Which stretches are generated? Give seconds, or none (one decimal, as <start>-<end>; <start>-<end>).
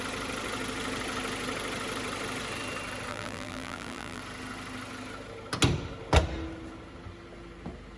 3.1-4.2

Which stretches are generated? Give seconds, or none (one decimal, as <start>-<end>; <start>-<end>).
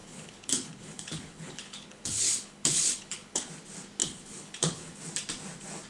0.0-3.5; 4.0-5.0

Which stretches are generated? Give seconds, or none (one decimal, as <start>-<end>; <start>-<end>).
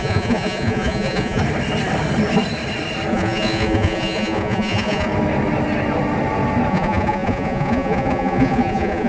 0.0-1.4; 3.1-5.1; 6.7-9.1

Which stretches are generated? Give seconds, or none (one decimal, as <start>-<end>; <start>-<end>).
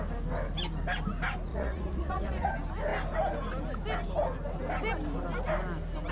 1.5-2.5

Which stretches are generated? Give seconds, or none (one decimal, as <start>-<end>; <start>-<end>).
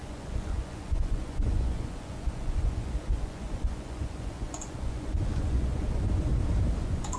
0.0-6.3; 6.8-7.2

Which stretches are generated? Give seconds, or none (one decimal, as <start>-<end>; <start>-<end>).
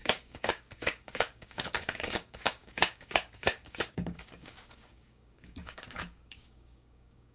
0.0-7.3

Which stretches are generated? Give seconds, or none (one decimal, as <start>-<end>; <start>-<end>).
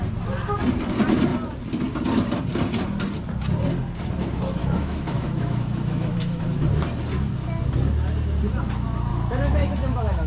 4.6-6.4; 9.1-10.3